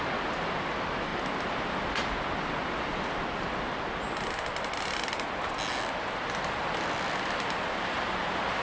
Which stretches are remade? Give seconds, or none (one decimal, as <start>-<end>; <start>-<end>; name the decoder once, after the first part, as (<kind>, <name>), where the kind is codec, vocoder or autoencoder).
none